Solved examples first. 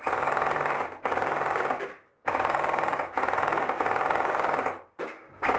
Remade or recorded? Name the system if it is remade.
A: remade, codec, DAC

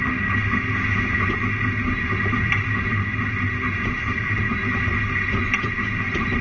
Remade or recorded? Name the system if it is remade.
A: recorded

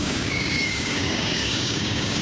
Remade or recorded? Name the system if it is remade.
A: remade, codec, DAC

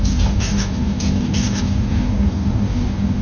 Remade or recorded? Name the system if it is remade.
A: remade, codec, DAC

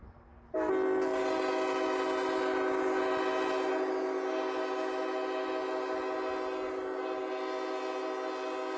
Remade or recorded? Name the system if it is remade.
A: recorded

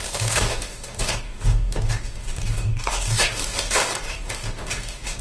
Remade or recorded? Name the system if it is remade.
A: remade, codec, DAC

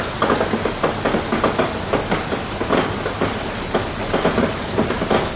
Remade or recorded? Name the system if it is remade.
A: recorded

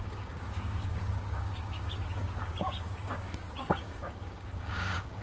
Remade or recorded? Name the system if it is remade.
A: remade, codec, DAC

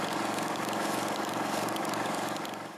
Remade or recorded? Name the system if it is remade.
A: remade, codec, DAC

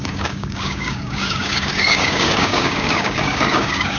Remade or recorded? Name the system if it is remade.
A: remade, codec, DAC